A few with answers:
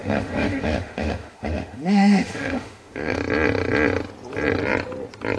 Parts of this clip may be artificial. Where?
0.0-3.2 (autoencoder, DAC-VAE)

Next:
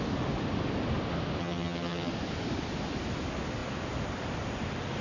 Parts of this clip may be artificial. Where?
1.4-2.1 (vocoder, HiFi-GAN)

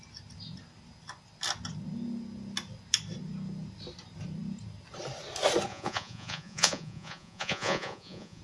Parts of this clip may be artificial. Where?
5.7-8.4 (vocoder, Vocos)

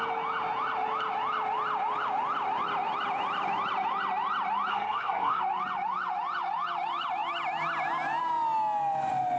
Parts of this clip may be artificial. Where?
4.7-5.4 (codec, SNAC)

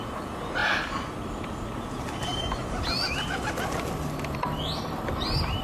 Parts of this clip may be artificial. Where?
none

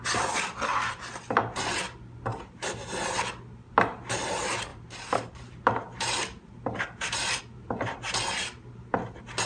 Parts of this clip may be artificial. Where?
2.3-3.2 (vocoder, BigVGAN v2); 4.7-7.4